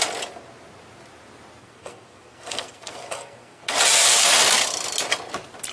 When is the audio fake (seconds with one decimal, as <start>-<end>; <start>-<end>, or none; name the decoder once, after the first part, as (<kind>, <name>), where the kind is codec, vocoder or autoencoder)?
1.6-3.7 (codec, SNAC)